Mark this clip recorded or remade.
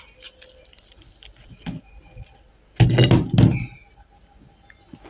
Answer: recorded